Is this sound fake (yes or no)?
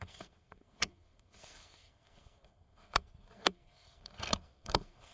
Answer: yes